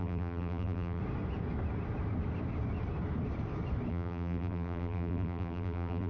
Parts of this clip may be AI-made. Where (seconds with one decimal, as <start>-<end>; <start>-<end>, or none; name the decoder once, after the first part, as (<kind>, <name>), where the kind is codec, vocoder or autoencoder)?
0.0-1.0 (vocoder, BigVGAN v2); 3.9-6.1